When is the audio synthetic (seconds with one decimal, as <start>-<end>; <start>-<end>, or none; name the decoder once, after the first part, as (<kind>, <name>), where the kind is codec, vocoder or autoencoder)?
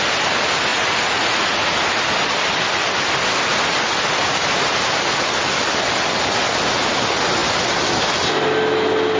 0.7-1.7 (vocoder, Vocos)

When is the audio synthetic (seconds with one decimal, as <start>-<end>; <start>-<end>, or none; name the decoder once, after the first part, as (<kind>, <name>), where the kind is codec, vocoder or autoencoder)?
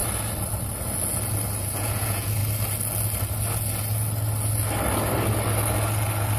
1.6-2.4 (vocoder, Vocos)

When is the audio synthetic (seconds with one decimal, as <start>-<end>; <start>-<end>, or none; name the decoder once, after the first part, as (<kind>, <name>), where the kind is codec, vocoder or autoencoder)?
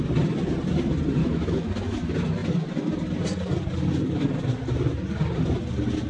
1.2-1.7 (autoencoder, DAC-VAE)